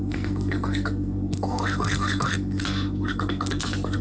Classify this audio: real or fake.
fake